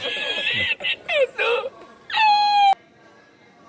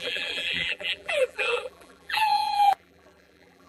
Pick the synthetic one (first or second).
second